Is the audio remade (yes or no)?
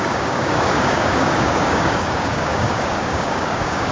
yes